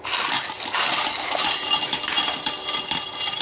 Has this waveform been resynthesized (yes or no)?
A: no